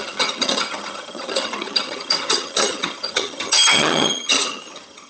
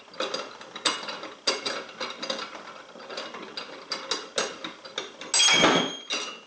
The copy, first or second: first